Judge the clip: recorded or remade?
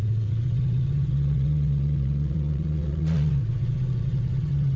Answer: remade